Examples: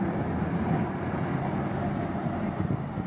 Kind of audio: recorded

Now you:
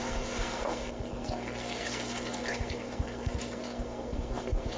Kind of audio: remade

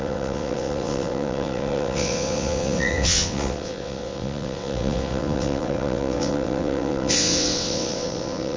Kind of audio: remade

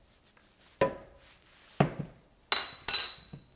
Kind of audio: recorded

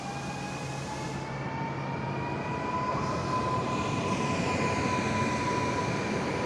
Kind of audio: recorded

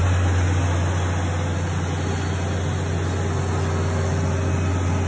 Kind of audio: recorded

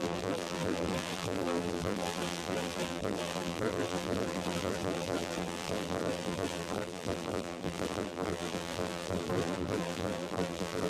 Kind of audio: remade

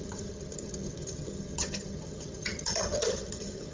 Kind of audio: remade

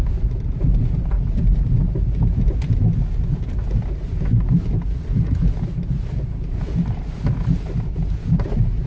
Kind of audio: recorded